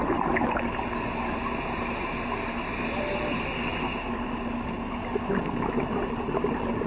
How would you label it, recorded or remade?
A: recorded